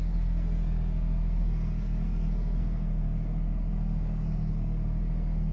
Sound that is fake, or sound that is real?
fake